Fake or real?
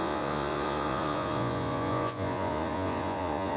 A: fake